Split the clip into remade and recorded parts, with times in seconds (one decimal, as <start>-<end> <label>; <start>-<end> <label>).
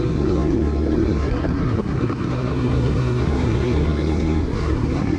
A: 0.0-5.2 remade